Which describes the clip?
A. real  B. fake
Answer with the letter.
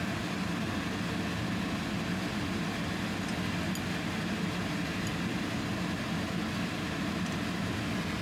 A